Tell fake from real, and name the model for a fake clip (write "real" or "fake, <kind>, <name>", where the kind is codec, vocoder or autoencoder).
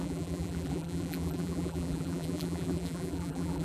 fake, vocoder, BigVGAN v2